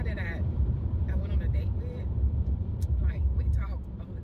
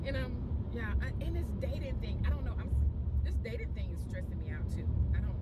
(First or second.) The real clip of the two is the second